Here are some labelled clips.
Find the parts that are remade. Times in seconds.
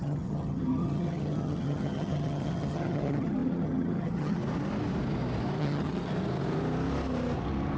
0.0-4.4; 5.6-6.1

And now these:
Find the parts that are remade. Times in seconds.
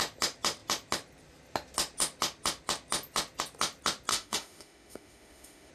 4.1-5.7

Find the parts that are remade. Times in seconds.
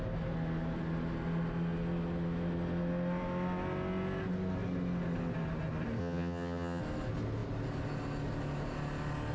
6.0-6.8